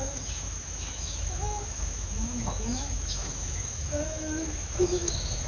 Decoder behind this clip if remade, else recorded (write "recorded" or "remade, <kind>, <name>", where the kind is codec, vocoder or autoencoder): remade, autoencoder, DAC-VAE